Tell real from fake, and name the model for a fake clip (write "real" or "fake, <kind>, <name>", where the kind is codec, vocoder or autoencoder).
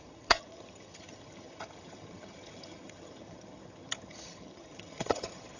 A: fake, vocoder, HiFi-GAN